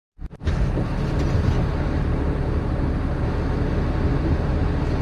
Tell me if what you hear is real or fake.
real